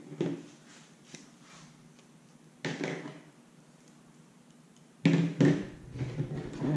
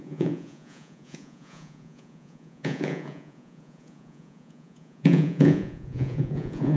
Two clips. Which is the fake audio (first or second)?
second